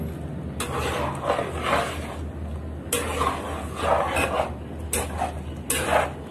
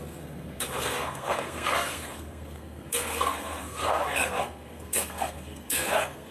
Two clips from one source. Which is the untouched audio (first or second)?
first